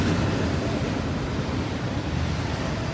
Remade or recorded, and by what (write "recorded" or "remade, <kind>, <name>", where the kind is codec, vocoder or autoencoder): recorded